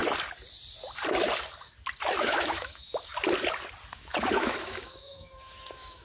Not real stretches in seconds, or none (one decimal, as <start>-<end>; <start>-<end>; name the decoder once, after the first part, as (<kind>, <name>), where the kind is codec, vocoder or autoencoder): 2.2-3.1 (autoencoder, DAC-VAE); 3.9-6.0